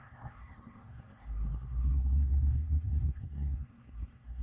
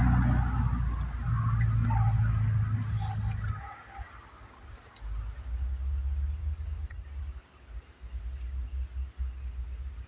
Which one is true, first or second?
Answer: second